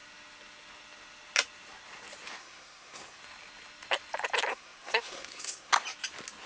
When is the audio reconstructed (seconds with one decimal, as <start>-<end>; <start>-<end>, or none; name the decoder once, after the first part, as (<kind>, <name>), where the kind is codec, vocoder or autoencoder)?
2.4-3.2 (codec, SNAC); 4.5-5.7